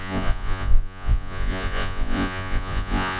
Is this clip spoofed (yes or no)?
yes